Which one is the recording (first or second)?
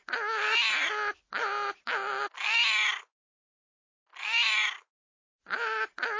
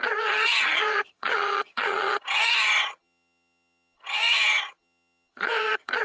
first